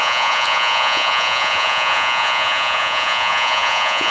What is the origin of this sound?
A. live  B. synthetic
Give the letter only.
B